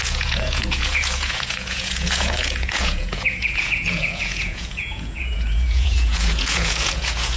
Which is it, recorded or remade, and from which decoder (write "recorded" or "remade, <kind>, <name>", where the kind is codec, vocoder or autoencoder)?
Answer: remade, vocoder, Vocos